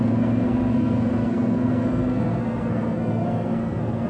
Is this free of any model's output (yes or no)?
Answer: no